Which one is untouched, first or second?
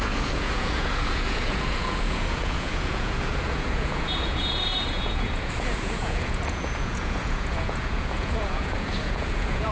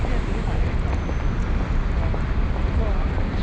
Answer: second